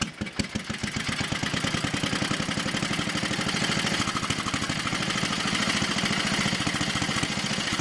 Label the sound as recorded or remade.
recorded